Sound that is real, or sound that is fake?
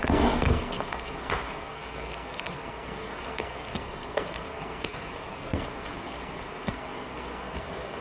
fake